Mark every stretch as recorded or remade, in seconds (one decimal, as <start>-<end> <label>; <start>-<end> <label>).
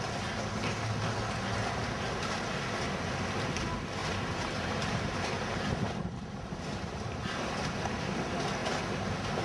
0.0-4.0 recorded; 4.0-8.1 remade; 8.1-9.4 recorded